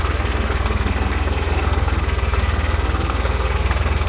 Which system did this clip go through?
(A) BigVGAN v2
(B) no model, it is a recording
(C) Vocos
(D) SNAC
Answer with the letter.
D